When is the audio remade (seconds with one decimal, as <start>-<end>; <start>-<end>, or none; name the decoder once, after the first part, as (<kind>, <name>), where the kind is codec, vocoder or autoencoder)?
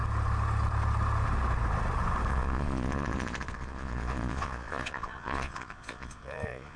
2.3-6.8 (vocoder, Vocos)